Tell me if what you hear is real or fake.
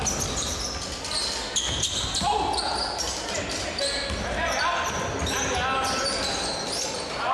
real